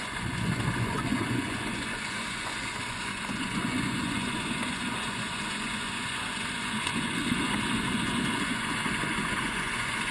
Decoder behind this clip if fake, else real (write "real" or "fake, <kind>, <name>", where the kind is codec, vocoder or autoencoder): fake, vocoder, Vocos